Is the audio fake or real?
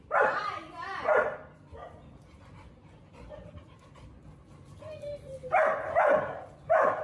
fake